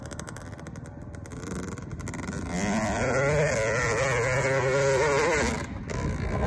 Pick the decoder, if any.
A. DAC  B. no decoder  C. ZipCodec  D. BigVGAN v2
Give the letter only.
B